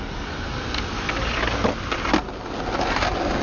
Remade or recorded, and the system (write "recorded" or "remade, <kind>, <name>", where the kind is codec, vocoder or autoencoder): recorded